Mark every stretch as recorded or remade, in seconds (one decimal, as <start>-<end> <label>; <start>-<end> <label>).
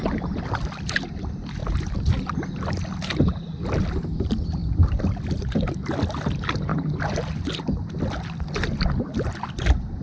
0.0-1.6 recorded; 1.6-2.2 remade; 2.2-4.6 recorded; 4.6-6.3 remade; 6.3-10.0 recorded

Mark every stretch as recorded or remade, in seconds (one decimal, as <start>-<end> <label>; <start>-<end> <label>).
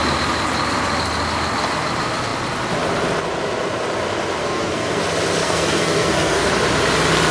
0.0-4.4 recorded; 4.4-5.0 remade; 5.0-5.4 recorded; 5.4-6.5 remade; 6.5-7.3 recorded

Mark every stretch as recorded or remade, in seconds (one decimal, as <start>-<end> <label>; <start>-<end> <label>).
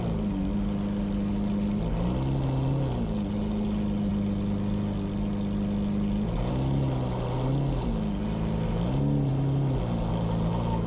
0.0-10.9 recorded